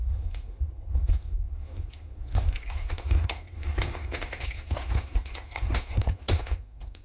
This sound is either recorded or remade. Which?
remade